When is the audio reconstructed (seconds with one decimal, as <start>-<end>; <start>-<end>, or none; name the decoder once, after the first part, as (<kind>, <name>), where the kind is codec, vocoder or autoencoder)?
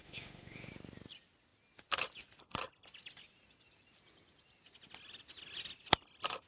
0.0-0.7 (autoencoder, DAC-VAE)